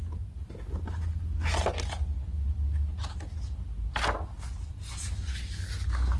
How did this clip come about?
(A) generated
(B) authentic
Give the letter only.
B